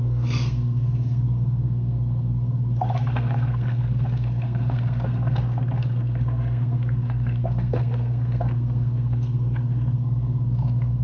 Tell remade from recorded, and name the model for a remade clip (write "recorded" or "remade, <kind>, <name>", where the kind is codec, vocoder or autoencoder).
remade, codec, SNAC